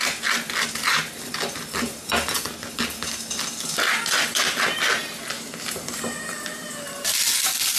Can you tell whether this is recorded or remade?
recorded